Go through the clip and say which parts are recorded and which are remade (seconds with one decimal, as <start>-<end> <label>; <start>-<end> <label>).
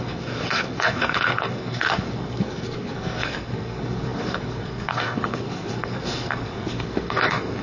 0.0-7.6 remade